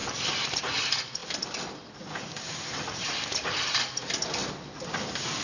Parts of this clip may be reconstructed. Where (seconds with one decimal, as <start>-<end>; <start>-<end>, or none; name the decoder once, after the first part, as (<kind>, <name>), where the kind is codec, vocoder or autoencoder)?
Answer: none